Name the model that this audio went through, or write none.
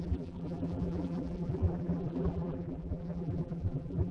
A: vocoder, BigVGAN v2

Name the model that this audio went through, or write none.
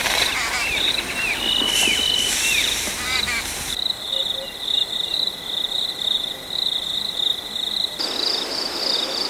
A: vocoder, BigVGAN v2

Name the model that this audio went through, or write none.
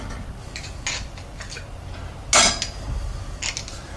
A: none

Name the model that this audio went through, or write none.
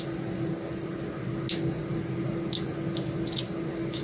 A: none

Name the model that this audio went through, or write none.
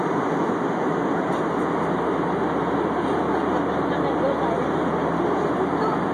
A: none